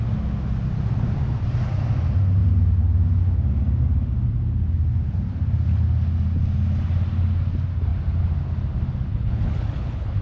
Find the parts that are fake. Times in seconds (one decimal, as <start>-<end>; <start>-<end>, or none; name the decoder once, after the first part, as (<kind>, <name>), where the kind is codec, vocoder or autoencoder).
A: 9.1-10.2 (codec, HILCodec)